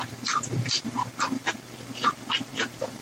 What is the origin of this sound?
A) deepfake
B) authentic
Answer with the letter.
A